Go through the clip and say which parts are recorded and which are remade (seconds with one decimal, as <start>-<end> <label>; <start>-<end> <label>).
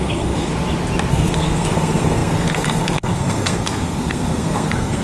0.0-0.5 remade; 0.5-1.1 recorded; 1.1-5.0 remade